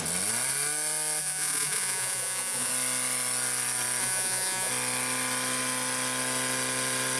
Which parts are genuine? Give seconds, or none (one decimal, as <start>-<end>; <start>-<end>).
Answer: 0.0-1.2; 2.7-4.0; 4.7-7.2